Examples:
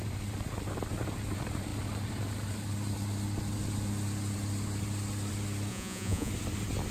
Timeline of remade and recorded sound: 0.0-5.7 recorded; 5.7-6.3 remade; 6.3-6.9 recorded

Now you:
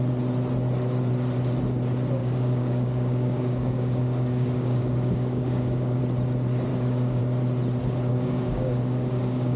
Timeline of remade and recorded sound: 0.0-2.2 recorded; 2.2-6.0 remade; 6.0-6.7 recorded; 6.7-7.2 remade; 7.2-8.1 recorded; 8.1-9.6 remade

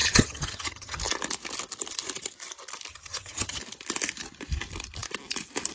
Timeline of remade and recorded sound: 0.0-1.0 remade; 1.0-2.9 recorded; 2.9-3.6 remade; 3.6-5.7 recorded

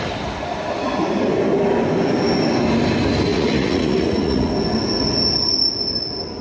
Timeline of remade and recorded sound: 0.0-3.3 recorded; 3.3-4.5 remade; 4.5-6.4 recorded

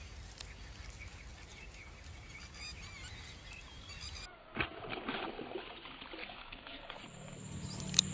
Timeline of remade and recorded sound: 0.0-6.2 recorded; 6.2-7.0 remade; 7.0-8.1 recorded

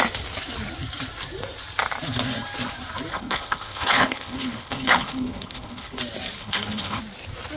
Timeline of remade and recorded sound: 0.0-3.1 recorded; 3.1-6.0 remade; 6.0-6.4 recorded; 6.4-7.0 remade; 7.0-7.6 recorded